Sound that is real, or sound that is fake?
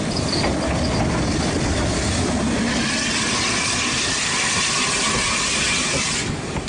real